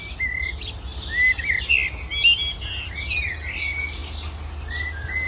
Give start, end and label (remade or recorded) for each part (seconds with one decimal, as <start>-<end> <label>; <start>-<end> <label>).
0.0-5.3 recorded